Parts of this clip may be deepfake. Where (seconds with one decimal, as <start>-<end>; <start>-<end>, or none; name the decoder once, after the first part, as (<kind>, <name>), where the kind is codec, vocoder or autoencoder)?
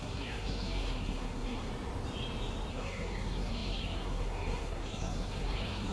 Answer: 0.0-1.7 (codec, SNAC); 2.7-5.9